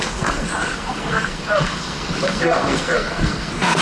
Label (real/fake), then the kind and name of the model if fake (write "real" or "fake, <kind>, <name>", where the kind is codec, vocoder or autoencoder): fake, codec, SNAC